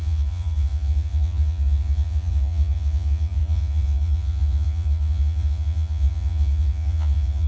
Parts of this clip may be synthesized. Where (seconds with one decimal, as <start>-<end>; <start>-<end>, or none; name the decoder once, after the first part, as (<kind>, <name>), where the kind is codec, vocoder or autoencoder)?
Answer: 0.0-7.5 (vocoder, Vocos)